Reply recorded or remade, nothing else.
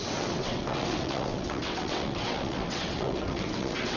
remade